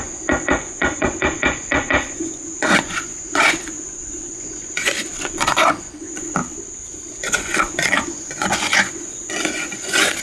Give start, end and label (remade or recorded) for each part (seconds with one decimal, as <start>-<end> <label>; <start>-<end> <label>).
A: 0.0-6.4 remade; 6.4-7.2 recorded; 7.2-10.2 remade